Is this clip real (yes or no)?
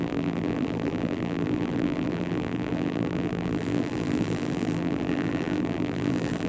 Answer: no